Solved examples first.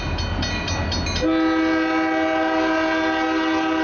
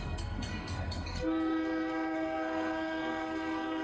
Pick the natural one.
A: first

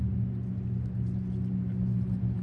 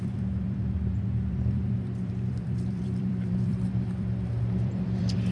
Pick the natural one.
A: first